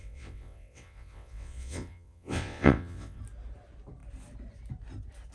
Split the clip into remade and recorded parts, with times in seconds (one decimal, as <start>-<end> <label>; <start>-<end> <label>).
0.0-3.2 remade; 3.2-5.3 recorded

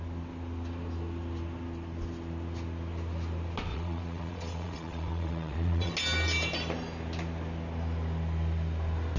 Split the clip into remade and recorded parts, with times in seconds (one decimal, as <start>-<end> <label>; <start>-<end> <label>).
0.0-3.7 recorded; 3.7-5.9 remade; 5.9-9.2 recorded

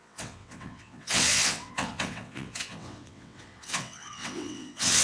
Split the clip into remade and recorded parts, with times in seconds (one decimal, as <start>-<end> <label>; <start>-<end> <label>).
0.0-5.0 remade

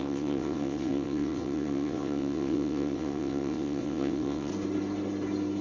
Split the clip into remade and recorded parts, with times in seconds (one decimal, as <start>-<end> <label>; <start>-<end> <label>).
0.0-4.5 remade; 4.5-5.6 recorded

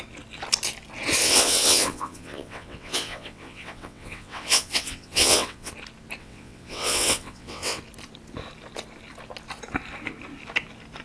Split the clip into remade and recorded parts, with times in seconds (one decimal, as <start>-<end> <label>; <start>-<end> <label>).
0.0-1.2 recorded; 1.2-5.7 remade; 5.7-6.2 recorded; 6.2-7.8 remade; 7.8-11.0 recorded

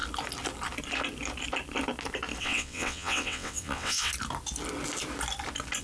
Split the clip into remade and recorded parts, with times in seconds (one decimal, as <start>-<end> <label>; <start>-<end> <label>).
0.0-2.4 recorded; 2.4-4.1 remade; 4.1-5.8 recorded

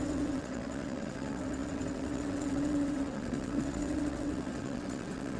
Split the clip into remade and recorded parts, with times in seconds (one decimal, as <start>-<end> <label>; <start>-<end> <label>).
0.0-5.4 remade

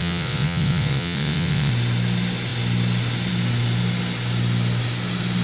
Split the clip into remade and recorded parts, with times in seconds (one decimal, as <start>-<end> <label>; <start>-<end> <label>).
0.0-1.7 remade; 1.7-5.4 recorded